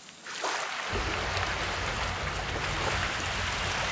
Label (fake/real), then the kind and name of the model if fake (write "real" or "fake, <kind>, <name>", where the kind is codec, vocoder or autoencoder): real